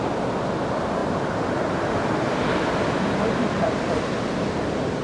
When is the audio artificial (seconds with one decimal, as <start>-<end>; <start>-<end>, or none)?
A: none